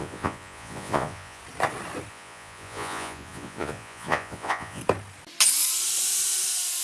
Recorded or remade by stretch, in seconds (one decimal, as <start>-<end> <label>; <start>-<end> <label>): 0.0-1.4 remade; 1.4-2.1 recorded; 2.1-4.8 remade; 4.8-6.8 recorded